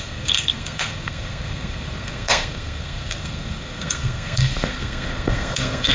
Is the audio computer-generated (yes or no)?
yes